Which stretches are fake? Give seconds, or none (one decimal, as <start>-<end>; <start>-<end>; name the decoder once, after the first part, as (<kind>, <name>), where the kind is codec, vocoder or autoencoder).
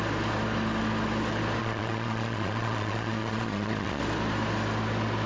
1.6-4.0 (vocoder, Vocos)